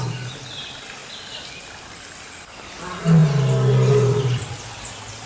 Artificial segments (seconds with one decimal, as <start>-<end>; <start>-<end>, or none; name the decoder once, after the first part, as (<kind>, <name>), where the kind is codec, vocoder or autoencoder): none